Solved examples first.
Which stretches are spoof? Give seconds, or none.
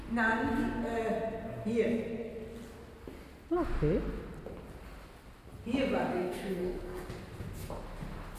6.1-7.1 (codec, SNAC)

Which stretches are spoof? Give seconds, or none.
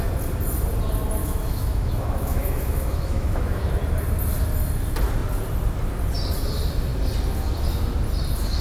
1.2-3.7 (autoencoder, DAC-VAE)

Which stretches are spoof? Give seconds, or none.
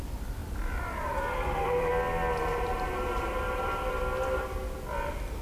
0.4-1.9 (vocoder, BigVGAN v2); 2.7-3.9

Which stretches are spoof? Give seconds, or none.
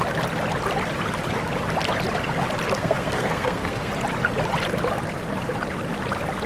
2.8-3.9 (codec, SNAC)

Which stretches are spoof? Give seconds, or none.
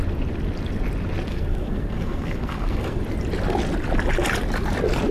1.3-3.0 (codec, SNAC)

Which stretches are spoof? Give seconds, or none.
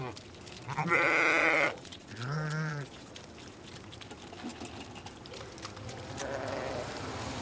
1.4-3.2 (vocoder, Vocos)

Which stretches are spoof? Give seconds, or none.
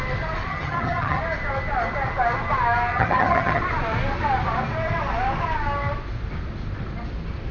0.5-1.2 (vocoder, HiFi-GAN); 2.9-3.6